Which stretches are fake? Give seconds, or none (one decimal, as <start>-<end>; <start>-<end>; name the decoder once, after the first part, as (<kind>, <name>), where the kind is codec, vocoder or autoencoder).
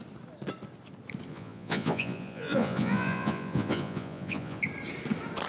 1.3-4.6 (vocoder, Vocos)